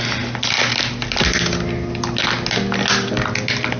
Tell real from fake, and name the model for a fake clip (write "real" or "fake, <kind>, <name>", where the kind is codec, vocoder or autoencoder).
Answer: real